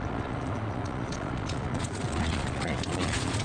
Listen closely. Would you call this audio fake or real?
fake